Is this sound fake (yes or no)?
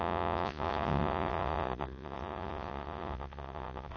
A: yes